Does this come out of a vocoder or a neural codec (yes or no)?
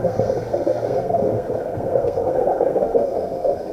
yes